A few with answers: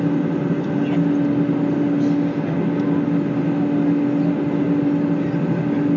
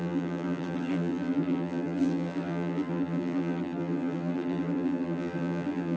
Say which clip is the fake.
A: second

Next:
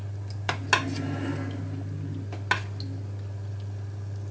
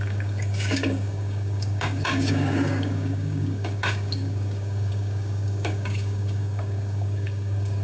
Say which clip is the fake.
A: second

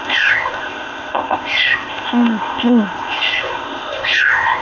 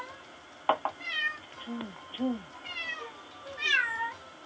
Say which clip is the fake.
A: first